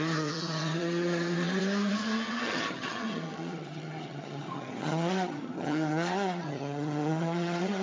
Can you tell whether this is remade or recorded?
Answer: remade